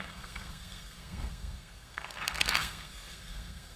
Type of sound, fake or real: fake